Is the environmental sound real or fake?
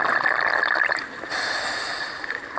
real